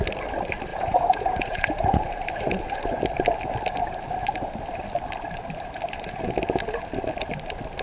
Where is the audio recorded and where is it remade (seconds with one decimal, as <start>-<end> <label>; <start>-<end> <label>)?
0.0-0.7 recorded; 0.7-2.0 remade; 2.0-7.8 recorded